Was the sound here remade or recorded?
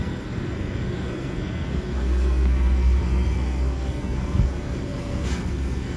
remade